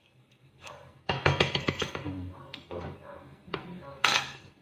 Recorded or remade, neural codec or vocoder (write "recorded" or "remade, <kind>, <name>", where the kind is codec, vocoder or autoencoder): remade, codec, SNAC